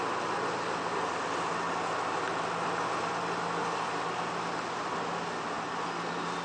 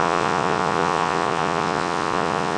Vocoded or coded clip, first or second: second